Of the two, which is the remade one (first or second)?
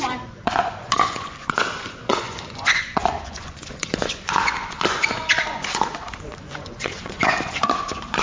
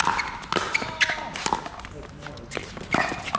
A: first